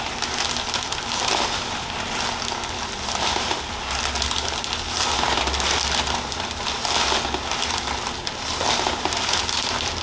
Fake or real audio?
real